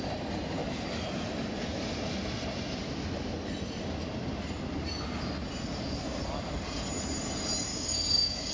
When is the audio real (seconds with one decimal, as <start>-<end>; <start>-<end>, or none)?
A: 0.0-7.7